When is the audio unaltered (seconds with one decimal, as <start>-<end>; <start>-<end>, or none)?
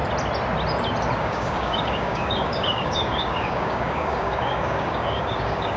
0.0-1.2